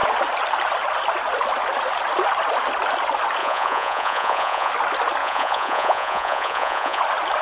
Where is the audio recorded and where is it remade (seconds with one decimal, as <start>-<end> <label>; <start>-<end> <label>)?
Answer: 0.0-3.4 recorded; 3.4-4.7 remade; 4.7-5.2 recorded; 5.2-7.0 remade; 7.0-7.4 recorded